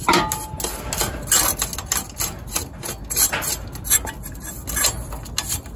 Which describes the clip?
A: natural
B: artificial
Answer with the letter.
A